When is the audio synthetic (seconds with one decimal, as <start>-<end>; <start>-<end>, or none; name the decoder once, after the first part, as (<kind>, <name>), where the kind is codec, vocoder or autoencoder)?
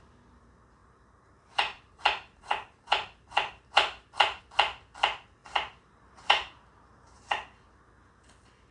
0.8-4.4 (vocoder, BigVGAN v2); 5.4-7.7